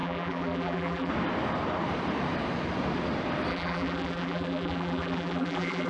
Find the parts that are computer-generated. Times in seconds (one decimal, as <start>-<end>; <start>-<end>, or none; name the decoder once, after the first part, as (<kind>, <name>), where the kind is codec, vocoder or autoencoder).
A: 0.0-1.1 (vocoder, BigVGAN v2); 3.5-5.9